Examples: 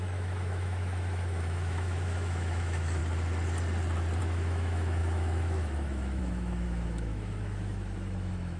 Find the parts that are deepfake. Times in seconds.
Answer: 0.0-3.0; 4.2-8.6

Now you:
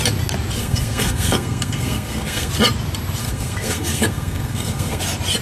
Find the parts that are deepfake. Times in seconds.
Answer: 0.6-2.5; 3.2-5.0